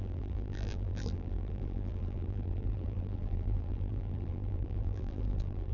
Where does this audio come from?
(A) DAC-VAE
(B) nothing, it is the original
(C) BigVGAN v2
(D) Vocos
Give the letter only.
C